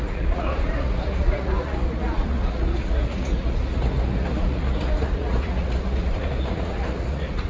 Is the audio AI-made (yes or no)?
yes